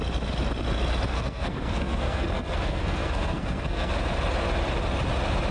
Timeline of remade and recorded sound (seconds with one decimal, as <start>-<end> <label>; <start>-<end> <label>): 0.0-1.1 recorded; 1.1-3.9 remade; 3.9-5.5 recorded